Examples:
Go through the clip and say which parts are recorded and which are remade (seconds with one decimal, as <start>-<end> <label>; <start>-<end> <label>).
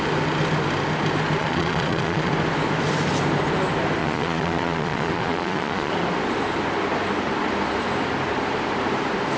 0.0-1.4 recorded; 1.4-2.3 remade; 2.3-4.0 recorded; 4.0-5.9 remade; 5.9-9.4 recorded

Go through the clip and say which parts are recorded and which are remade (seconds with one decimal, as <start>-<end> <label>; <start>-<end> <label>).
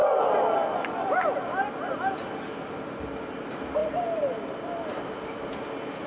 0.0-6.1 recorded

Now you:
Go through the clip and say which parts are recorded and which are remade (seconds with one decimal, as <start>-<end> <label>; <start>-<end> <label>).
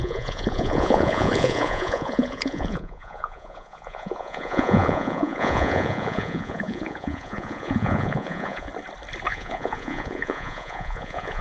0.0-8.7 remade; 8.7-9.3 recorded; 9.3-11.4 remade